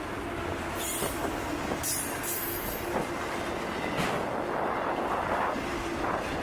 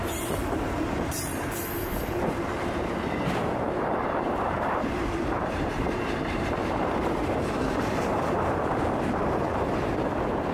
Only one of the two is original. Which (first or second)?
first